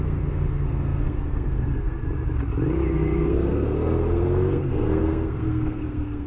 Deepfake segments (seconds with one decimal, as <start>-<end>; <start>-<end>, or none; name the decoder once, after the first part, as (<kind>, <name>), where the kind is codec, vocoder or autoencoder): 0.0-2.0 (codec, SNAC); 2.9-6.3